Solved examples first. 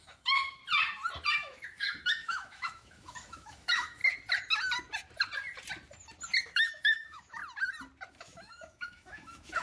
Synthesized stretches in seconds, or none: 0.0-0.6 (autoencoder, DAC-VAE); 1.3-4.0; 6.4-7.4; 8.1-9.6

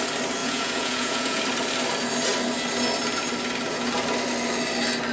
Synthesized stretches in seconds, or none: 0.4-1.4 (vocoder, Vocos)

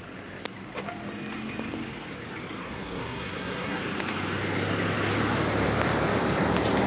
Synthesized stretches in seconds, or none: 2.6-3.8 (codec, SNAC)

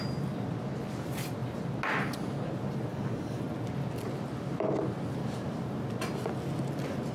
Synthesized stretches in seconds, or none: 2.9-3.4 (codec, DAC)

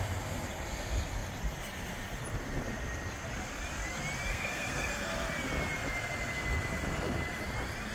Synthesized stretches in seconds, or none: 4.3-4.9 (codec, SNAC)

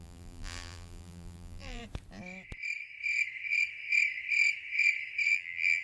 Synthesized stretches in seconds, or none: 0.0-1.8 (vocoder, BigVGAN v2); 5.3-5.8